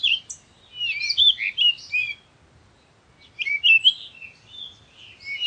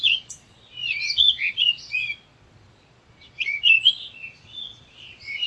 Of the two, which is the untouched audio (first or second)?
first